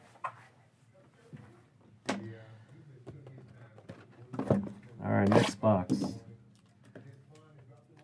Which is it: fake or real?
real